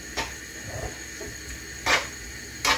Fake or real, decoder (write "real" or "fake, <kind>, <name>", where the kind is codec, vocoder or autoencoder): real